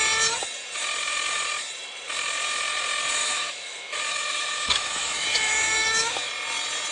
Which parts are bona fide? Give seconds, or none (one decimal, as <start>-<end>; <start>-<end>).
0.0-3.2; 6.3-6.9